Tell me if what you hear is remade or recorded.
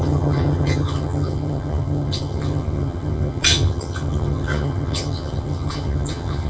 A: remade